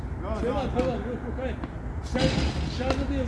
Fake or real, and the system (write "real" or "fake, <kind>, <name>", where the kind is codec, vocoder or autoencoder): real